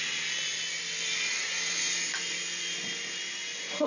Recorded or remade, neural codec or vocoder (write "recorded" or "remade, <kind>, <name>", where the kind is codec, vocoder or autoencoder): recorded